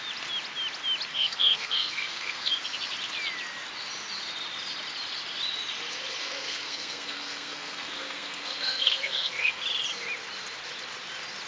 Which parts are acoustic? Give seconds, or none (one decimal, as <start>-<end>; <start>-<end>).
0.0-1.1; 2.5-6.2; 9.6-11.5